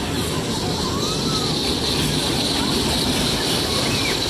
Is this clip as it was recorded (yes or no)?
yes